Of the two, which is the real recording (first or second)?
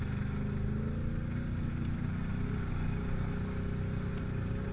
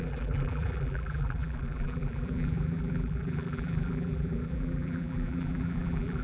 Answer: first